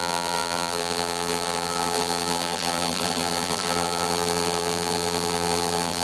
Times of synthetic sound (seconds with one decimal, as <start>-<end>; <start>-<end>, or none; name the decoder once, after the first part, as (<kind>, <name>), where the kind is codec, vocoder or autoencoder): 0.0-6.0 (vocoder, BigVGAN v2)